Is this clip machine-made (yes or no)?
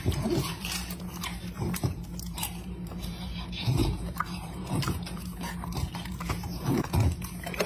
yes